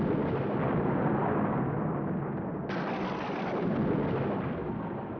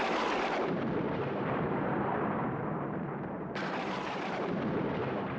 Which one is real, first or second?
first